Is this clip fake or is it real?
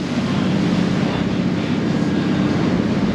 real